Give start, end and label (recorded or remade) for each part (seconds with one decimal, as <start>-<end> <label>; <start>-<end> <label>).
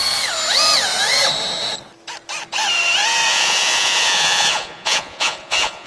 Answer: 0.0-3.3 recorded; 3.3-5.9 remade